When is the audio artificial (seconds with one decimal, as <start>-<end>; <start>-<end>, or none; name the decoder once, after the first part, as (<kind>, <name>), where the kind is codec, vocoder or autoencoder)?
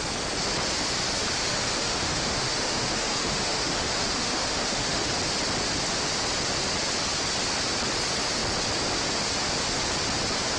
1.4-5.1 (autoencoder, DAC-VAE)